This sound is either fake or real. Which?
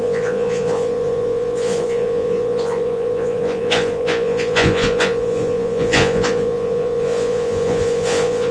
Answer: fake